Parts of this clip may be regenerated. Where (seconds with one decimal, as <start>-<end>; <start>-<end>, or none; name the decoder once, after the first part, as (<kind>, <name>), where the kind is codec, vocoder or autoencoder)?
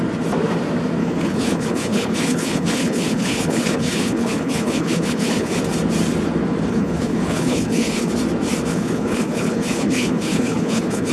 1.0-5.6 (codec, HILCodec); 6.7-8.1; 8.7-11.1